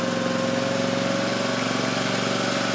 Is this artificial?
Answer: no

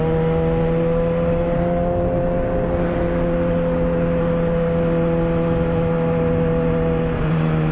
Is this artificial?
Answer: no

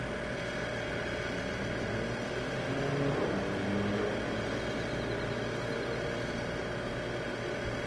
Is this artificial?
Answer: no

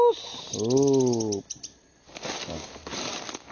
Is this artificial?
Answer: no